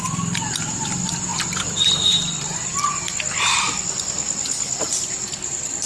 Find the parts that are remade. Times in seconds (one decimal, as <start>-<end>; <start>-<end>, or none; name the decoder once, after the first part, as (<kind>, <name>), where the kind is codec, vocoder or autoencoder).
1.3-3.1 (vocoder, BigVGAN v2)